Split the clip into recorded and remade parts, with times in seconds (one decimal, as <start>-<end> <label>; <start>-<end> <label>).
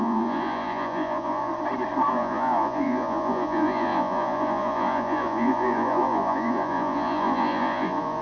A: 0.0-1.5 remade; 1.5-2.1 recorded; 2.1-8.2 remade